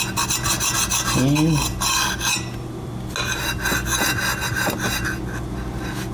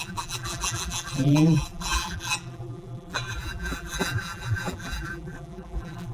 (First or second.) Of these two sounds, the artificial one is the second